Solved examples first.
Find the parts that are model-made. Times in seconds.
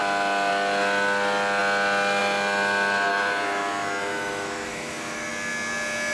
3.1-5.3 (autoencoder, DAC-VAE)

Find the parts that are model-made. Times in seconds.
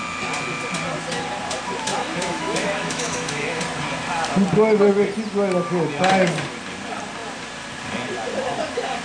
1.9-3.6 (autoencoder, DAC-VAE)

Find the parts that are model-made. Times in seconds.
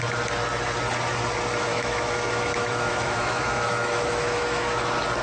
1.7-4.8 (autoencoder, DAC-VAE)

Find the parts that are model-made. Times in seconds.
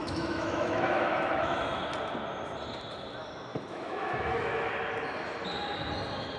0.0-1.8 (autoencoder, DAC-VAE); 3.5-4.7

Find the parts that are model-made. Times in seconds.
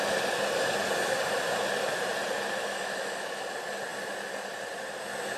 2.6-3.4 (autoencoder, DAC-VAE)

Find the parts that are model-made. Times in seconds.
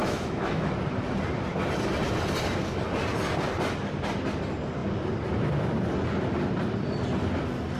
0.0-0.7 (autoencoder, DAC-VAE)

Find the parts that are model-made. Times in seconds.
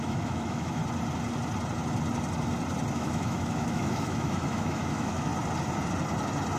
0.0-0.8 (autoencoder, DAC-VAE); 2.9-5.3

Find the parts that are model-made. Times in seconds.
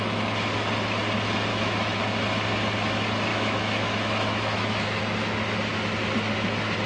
1.5-2.0 (autoencoder, DAC-VAE); 3.3-5.0